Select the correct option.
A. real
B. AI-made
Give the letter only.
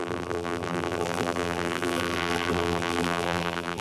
B